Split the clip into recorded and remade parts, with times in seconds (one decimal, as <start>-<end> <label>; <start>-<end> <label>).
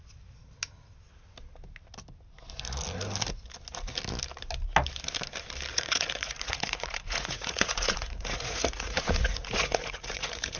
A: 0.0-5.7 recorded; 5.7-10.6 remade